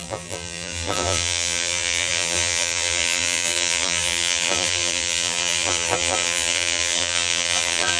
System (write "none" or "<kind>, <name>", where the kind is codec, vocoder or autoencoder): vocoder, BigVGAN v2